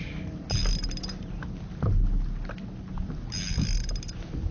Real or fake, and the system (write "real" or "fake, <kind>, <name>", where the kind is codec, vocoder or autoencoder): real